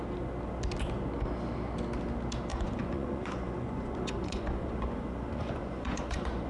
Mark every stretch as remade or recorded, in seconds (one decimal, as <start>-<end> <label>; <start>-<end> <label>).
0.0-2.5 recorded; 2.5-6.5 remade